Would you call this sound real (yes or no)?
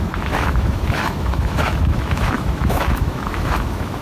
no